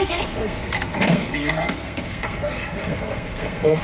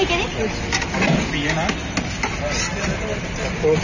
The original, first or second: second